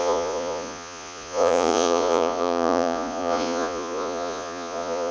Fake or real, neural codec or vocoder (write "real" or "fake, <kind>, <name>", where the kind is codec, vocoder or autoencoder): fake, vocoder, Vocos